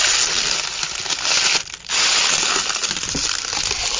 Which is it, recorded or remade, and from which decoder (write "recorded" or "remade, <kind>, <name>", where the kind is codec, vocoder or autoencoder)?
recorded